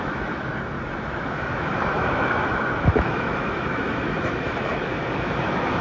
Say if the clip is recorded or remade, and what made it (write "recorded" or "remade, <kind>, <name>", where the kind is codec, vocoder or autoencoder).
remade, autoencoder, DAC-VAE